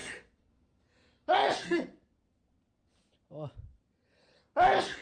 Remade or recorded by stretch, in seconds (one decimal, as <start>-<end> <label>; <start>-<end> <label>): 0.0-0.5 remade; 0.5-1.4 recorded; 1.4-4.4 remade; 4.4-5.0 recorded